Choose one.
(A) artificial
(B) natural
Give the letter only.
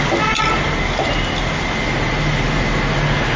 B